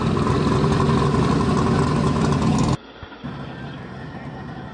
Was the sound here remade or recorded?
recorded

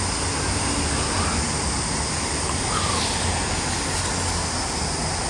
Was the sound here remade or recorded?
recorded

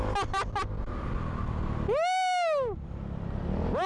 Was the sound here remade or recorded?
recorded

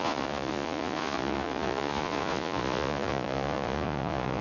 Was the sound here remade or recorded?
remade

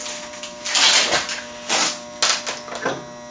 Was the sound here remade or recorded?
recorded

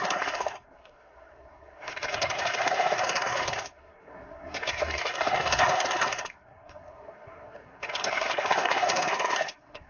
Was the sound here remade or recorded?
remade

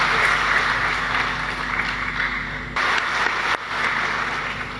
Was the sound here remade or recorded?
recorded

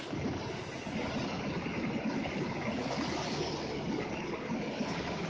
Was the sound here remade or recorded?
remade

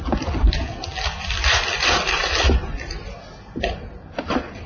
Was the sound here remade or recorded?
recorded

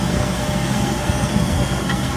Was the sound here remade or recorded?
remade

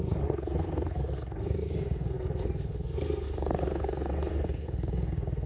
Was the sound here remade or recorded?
remade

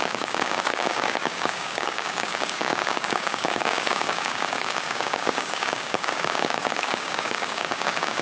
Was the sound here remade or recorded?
remade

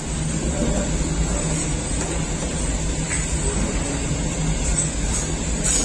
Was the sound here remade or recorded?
recorded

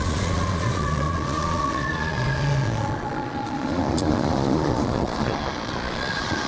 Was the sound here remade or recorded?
remade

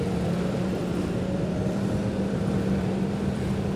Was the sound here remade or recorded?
remade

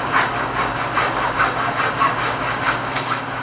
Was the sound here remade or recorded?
remade